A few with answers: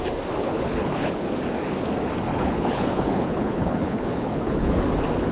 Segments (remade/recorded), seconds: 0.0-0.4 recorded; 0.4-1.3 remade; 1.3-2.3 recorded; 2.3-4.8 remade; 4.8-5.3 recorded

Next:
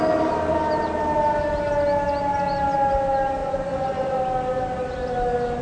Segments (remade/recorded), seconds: 0.0-3.4 recorded; 3.4-4.2 remade; 4.2-5.6 recorded